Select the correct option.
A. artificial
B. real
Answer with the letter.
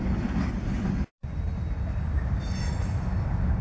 B